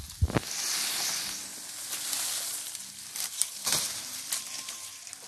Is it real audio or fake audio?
real